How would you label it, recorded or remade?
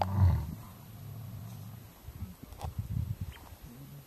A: recorded